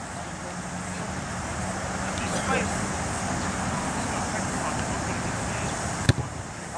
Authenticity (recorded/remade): recorded